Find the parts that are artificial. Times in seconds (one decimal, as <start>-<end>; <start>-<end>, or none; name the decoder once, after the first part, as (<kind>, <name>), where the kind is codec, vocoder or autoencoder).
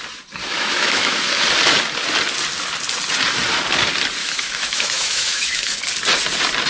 0.4-1.3 (autoencoder, DAC-VAE); 4.2-5.8